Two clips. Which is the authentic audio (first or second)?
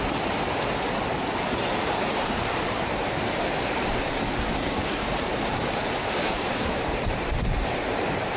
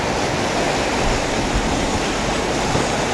second